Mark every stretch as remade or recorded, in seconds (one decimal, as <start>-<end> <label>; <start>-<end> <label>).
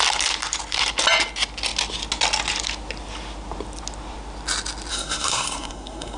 0.0-4.9 recorded; 4.9-6.2 remade